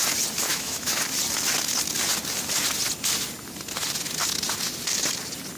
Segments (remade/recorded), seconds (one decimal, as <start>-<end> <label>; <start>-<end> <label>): 0.0-0.5 recorded; 0.5-1.0 remade; 1.0-5.6 recorded